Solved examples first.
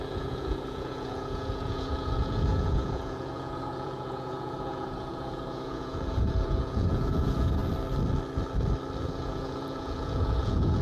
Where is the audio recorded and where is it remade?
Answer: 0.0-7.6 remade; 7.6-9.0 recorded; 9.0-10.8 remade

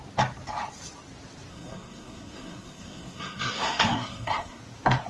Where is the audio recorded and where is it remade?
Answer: 0.0-1.5 recorded; 1.5-4.6 remade; 4.6-5.1 recorded